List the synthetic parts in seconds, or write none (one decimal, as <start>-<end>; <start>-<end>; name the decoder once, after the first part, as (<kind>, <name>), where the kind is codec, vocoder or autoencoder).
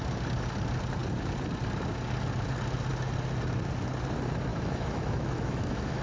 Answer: 4.5-6.0 (autoencoder, DAC-VAE)